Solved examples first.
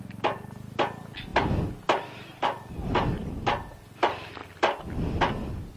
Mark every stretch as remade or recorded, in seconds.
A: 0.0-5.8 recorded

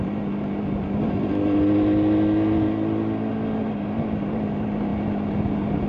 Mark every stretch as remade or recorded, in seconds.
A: 0.0-5.9 recorded

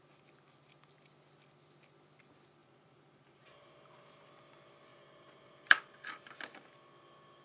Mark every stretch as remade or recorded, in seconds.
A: 0.0-2.6 recorded; 2.6-4.3 remade; 4.3-4.9 recorded; 4.9-5.9 remade; 5.9-7.4 recorded

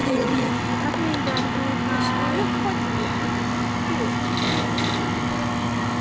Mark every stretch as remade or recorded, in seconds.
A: 0.0-0.5 remade; 0.5-6.0 recorded